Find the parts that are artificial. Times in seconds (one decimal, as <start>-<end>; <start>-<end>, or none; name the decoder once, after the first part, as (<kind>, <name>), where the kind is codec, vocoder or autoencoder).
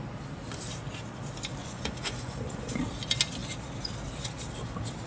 1.6-2.8 (vocoder, Vocos)